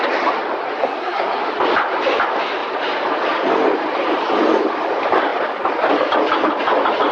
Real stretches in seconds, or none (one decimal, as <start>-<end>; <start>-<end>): 0.0-0.8; 1.4-7.1